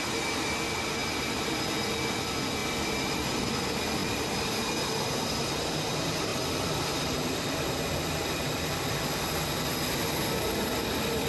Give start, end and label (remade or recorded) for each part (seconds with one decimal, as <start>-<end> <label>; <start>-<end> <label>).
0.0-1.0 recorded; 1.0-1.5 remade; 1.5-2.6 recorded; 2.6-3.3 remade; 3.3-4.0 recorded; 4.0-4.6 remade; 4.6-6.3 recorded; 6.3-9.3 remade; 9.3-11.3 recorded